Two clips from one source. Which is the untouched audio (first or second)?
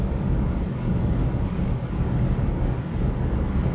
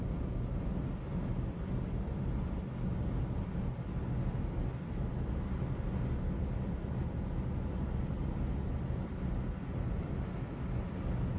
second